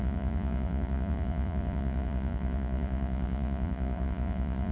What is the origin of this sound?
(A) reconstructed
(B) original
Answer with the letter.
A